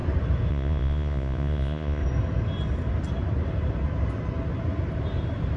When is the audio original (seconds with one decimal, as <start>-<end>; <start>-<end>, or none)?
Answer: 0.0-0.5; 2.0-5.6